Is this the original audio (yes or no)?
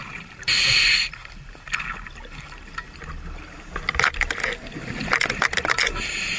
yes